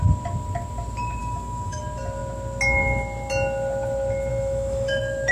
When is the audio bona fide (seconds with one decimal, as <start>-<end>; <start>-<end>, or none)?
0.0-1.2; 1.8-4.3